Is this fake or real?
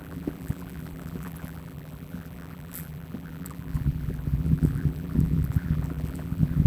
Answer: fake